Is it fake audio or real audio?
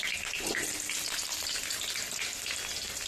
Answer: real